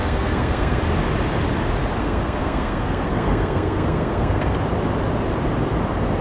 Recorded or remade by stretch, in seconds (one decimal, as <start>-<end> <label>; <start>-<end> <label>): 0.0-0.8 remade; 0.8-2.0 recorded; 2.0-4.5 remade; 4.5-6.2 recorded